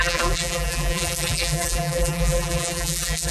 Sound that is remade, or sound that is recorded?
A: remade